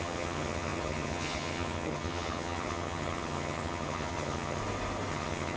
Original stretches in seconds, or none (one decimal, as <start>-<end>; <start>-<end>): 4.6-5.1